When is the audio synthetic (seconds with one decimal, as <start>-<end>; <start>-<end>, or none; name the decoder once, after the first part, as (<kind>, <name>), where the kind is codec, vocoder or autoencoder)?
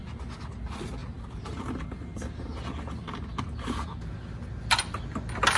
1.0-1.6 (vocoder, BigVGAN v2)